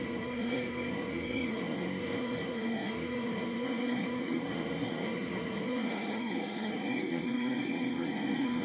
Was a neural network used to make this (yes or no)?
yes